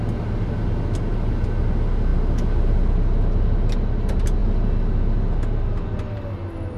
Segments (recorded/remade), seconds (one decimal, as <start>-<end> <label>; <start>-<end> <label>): 0.0-6.8 recorded